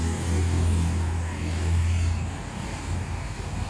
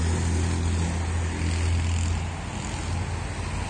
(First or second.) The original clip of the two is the second